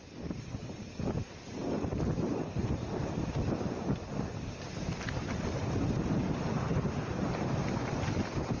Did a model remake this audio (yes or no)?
no